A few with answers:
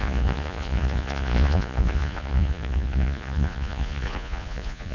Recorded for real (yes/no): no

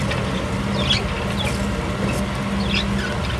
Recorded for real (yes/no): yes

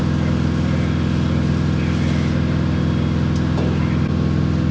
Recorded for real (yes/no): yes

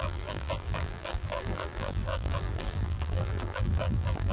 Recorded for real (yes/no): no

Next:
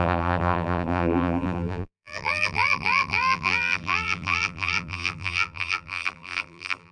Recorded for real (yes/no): no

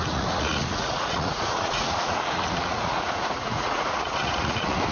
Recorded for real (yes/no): no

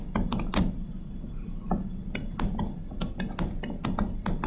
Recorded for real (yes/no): yes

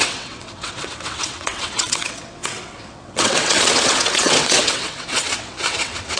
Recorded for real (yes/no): no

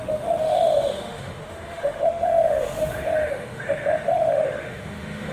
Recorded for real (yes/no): no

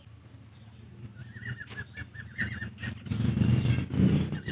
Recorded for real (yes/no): yes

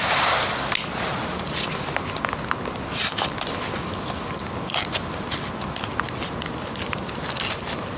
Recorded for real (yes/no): yes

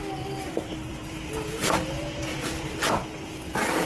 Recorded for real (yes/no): yes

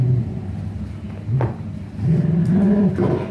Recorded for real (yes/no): yes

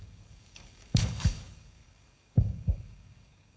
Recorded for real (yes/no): no